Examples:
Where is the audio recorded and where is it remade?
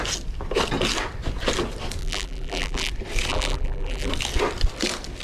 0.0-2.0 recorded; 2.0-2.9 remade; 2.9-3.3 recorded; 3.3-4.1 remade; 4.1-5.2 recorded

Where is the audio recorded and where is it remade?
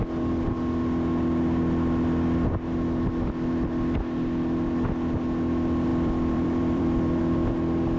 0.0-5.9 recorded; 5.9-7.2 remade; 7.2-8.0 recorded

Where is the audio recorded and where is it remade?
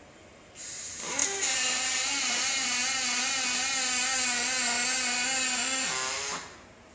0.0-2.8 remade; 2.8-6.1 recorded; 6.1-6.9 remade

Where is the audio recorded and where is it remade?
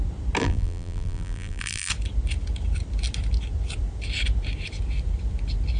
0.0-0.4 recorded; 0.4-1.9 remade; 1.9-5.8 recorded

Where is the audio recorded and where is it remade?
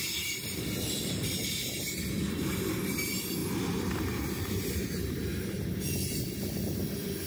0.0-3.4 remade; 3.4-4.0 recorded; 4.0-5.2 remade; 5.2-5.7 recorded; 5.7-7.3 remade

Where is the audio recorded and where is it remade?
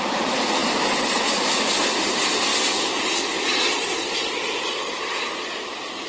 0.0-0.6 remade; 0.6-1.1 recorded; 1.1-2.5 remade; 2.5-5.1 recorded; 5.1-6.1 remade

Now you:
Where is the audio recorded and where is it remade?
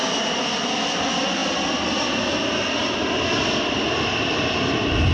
0.0-5.1 recorded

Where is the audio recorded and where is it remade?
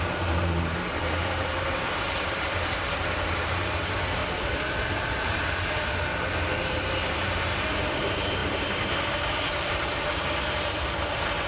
0.0-4.2 remade; 4.2-6.6 recorded; 6.6-11.5 remade